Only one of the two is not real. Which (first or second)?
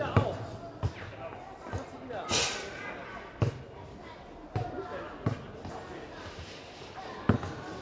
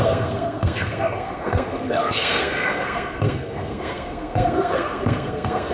second